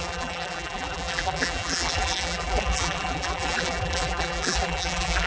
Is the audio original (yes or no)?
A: no